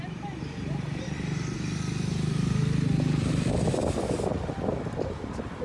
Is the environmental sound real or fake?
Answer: real